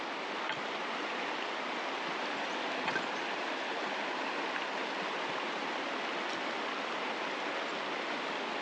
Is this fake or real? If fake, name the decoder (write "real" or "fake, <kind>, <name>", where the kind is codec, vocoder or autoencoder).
real